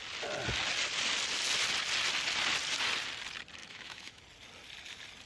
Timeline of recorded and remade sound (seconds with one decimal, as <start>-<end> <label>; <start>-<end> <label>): 0.0-3.6 recorded; 3.6-4.2 remade; 4.2-5.3 recorded